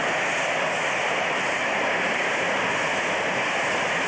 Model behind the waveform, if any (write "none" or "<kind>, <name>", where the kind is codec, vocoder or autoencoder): none